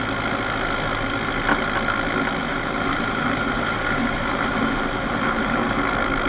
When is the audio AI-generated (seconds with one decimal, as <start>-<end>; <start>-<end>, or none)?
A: 2.4-5.8